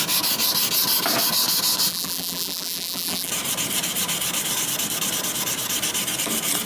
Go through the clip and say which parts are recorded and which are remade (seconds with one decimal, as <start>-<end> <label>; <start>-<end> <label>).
0.0-1.9 recorded; 1.9-3.3 remade; 3.3-6.7 recorded